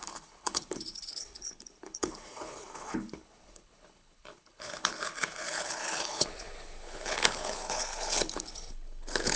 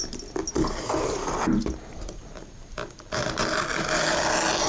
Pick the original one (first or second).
second